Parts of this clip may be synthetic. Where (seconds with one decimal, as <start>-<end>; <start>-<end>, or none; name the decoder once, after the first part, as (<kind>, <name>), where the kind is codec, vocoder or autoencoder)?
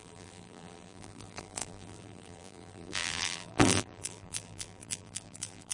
0.0-5.7 (vocoder, BigVGAN v2)